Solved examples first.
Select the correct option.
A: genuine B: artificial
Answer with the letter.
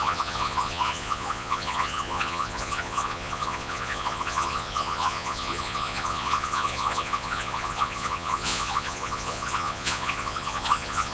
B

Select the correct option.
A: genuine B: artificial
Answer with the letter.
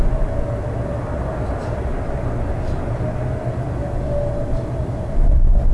A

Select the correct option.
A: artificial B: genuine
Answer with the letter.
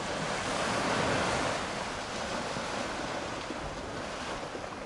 B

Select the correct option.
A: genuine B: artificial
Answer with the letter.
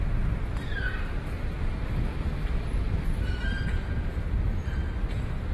A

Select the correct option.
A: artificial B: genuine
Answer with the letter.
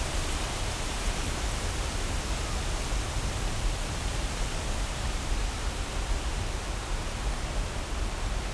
B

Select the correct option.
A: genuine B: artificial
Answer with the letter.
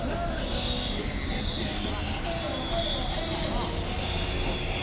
A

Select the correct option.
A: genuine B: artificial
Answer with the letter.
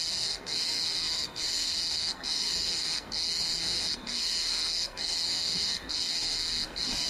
B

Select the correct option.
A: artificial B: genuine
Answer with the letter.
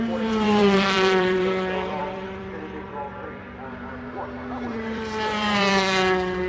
A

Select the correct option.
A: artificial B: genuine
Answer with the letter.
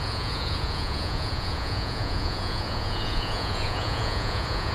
A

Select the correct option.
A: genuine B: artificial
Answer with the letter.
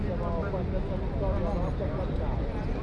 A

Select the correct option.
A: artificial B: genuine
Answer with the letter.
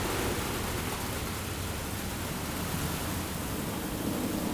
B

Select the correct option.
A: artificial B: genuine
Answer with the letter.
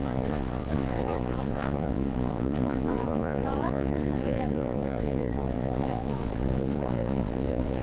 A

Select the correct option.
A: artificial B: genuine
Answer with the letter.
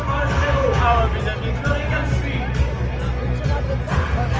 B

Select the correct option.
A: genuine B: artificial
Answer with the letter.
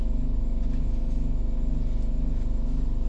A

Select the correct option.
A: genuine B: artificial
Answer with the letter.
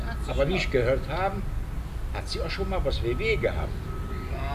A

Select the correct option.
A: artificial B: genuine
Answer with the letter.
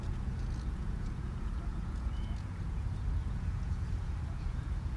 A